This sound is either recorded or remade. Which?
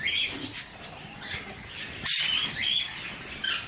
recorded